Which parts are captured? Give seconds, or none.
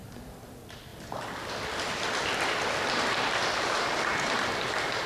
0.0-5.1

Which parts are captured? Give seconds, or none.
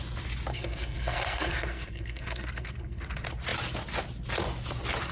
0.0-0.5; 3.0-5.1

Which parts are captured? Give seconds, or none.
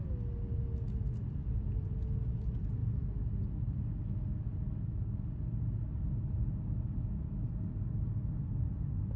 0.0-9.2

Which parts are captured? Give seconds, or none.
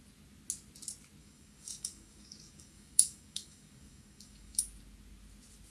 0.0-1.2; 4.6-5.7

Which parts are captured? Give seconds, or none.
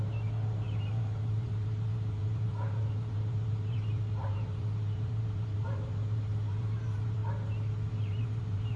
7.2-7.9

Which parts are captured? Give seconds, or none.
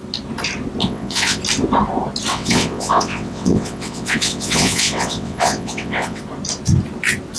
0.0-0.8; 1.4-2.3; 6.2-7.4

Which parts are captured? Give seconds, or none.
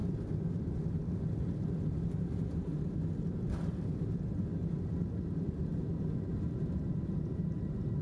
0.0-8.0